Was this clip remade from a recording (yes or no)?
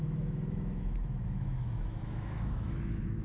yes